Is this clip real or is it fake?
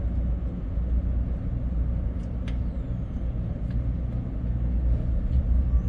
real